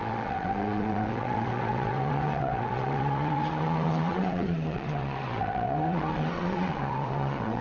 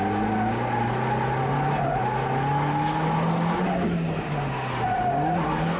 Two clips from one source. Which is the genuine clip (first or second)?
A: second